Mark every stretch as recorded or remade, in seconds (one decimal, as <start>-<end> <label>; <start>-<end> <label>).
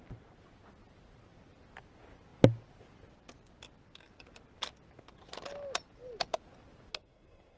0.0-6.9 recorded; 6.9-7.6 remade